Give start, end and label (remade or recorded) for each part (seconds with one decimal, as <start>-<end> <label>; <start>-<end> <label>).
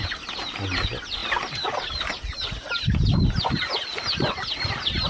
0.0-5.1 recorded